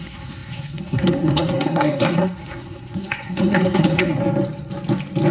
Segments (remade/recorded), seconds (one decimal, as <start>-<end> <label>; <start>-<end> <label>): 0.0-4.2 remade; 4.2-5.3 recorded